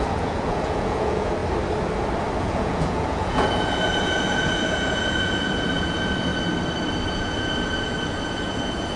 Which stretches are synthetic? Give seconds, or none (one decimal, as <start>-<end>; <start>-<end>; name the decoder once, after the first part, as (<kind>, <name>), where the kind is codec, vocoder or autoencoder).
0.0-1.4 (vocoder, Vocos); 2.4-6.3; 7.1-9.0